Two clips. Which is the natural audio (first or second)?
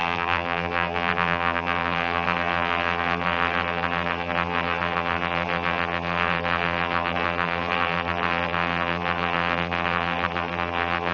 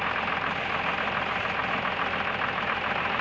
second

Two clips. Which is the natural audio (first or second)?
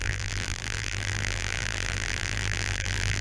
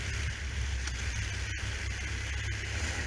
second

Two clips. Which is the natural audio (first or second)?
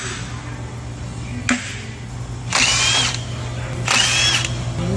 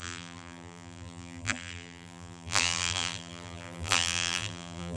first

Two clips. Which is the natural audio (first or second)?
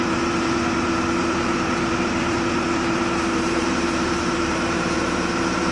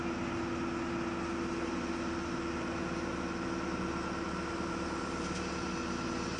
second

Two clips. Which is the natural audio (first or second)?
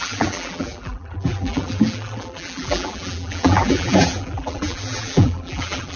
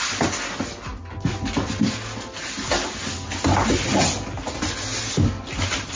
second